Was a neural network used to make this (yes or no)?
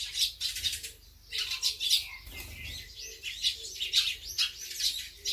no